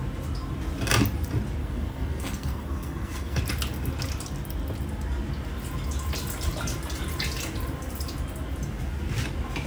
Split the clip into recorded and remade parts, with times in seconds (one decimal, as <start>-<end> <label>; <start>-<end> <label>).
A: 0.0-1.6 recorded; 1.6-3.4 remade; 3.4-9.7 recorded